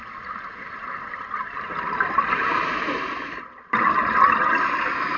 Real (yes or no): no